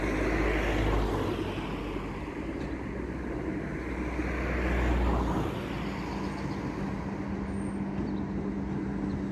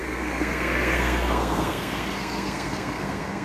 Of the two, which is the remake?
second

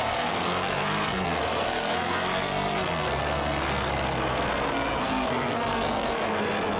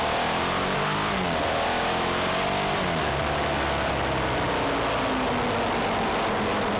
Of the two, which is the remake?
first